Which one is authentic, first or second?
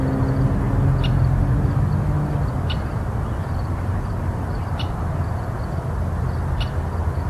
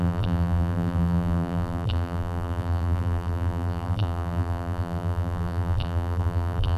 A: first